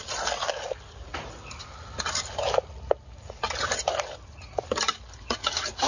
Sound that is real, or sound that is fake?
real